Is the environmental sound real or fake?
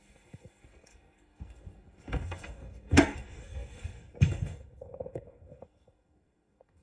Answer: fake